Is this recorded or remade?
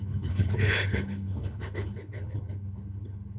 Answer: remade